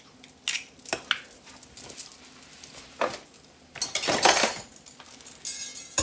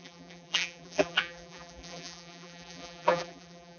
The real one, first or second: first